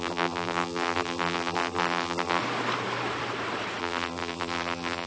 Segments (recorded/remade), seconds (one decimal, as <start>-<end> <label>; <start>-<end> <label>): 0.0-2.4 remade; 2.4-3.8 recorded; 3.8-5.1 remade